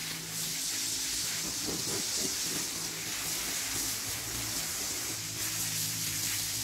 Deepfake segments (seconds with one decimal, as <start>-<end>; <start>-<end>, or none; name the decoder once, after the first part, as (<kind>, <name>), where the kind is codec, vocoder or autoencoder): 4.0-6.6 (vocoder, BigVGAN v2)